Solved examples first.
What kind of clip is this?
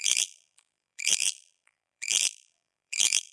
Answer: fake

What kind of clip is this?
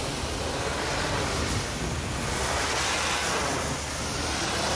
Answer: real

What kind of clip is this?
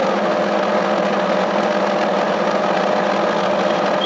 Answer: real